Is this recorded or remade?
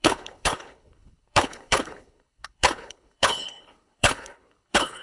remade